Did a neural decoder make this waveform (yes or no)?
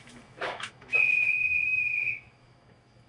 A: yes